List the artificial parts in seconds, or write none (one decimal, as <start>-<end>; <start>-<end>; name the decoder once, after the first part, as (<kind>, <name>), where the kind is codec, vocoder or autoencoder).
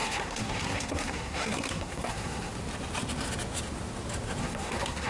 0.0-2.5 (codec, SNAC); 4.4-5.1